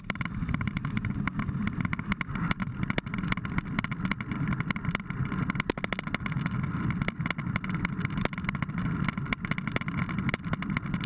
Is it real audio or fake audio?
real